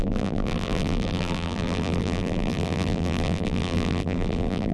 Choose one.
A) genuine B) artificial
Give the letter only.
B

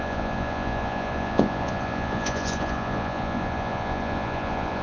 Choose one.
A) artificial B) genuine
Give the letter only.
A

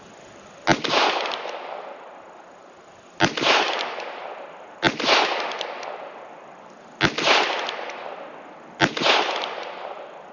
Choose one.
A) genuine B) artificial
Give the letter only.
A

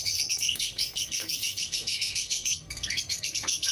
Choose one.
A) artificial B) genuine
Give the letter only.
A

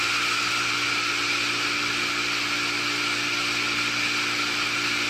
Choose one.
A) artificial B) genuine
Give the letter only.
B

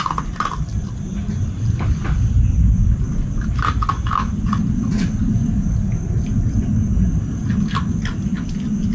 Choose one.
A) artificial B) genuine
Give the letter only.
B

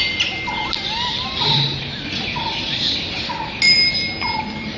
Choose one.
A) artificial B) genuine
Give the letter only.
B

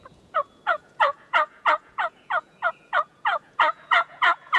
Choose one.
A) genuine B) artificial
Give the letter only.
B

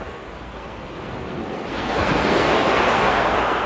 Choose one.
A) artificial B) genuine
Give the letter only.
A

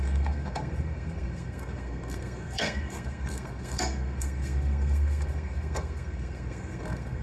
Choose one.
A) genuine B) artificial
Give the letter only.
B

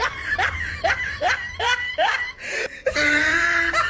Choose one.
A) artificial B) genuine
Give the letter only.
A